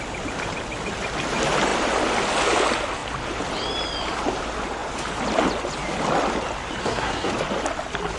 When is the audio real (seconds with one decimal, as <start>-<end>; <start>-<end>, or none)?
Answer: 0.0-6.8; 7.3-8.2